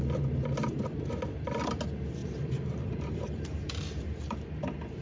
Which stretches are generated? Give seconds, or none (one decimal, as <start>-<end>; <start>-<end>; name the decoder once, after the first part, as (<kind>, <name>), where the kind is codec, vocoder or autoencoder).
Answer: 2.2-5.0 (vocoder, BigVGAN v2)